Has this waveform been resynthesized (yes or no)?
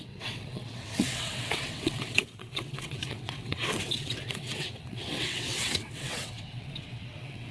yes